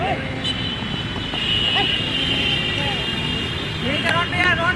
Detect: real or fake real